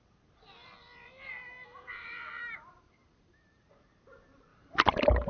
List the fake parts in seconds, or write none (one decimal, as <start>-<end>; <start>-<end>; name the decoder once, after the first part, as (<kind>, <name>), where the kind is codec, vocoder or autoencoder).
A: 0.8-3.8 (vocoder, BigVGAN v2); 4.5-5.3